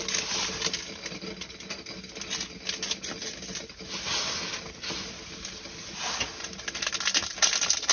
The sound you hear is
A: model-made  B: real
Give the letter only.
B